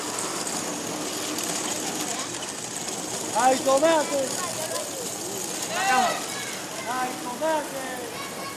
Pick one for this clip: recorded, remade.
recorded